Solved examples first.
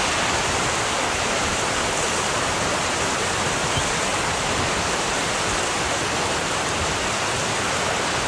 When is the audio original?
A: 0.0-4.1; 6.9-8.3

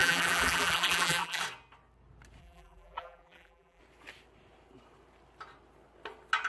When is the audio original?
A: 1.4-2.4; 3.8-6.5